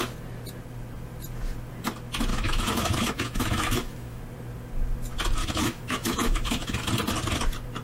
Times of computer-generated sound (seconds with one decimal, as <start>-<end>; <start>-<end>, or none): 2.3-4.2; 5.4-6.9